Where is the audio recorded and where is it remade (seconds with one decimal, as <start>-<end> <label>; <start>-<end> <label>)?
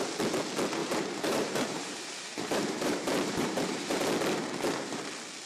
0.0-0.8 recorded; 0.8-4.1 remade; 4.1-5.5 recorded